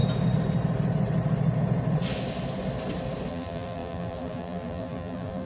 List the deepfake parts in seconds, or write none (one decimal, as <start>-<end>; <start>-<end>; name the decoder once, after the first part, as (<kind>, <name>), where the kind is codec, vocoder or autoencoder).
3.3-5.5 (vocoder, BigVGAN v2)